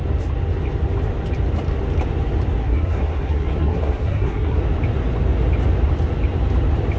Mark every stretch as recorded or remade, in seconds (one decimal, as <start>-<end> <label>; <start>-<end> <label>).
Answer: 0.0-2.6 recorded; 2.6-4.6 remade; 4.6-7.0 recorded